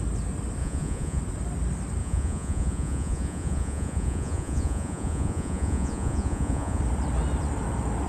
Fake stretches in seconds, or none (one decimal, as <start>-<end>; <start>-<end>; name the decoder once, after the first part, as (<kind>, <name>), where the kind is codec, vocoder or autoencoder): 0.6-1.2 (vocoder, Vocos); 2.0-6.8